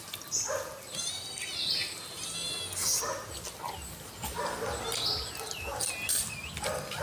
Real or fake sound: real